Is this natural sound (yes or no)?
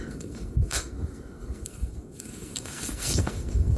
no